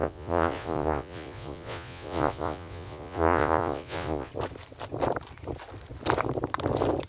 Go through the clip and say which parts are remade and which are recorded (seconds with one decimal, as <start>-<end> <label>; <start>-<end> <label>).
0.0-4.3 remade; 4.3-7.1 recorded